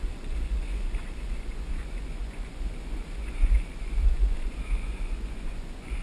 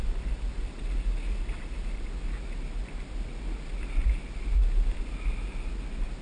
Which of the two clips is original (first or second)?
second